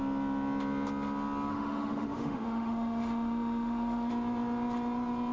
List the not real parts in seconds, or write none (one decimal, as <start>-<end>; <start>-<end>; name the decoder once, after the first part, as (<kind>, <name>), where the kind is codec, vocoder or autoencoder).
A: 1.5-4.1 (autoencoder, DAC-VAE)